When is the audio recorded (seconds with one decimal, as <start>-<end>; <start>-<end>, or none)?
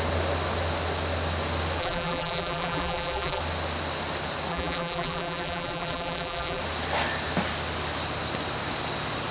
0.0-1.8; 3.4-4.5; 6.6-9.3